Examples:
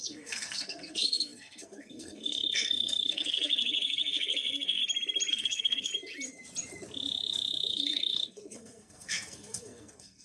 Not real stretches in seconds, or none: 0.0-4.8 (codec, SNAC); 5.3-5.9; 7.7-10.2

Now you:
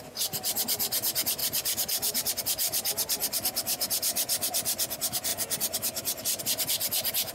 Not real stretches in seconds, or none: 1.4-2.3 (vocoder, BigVGAN v2); 5.3-6.4

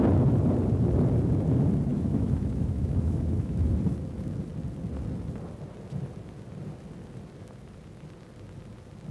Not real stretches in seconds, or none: 1.9-3.7 (autoencoder, DAC-VAE)